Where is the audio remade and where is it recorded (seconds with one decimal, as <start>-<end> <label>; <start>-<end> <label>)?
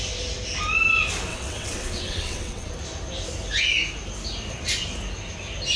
0.0-1.3 recorded; 1.3-2.7 remade; 2.7-5.8 recorded